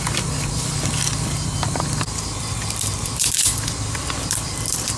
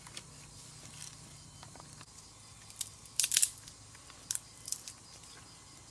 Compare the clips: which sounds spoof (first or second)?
first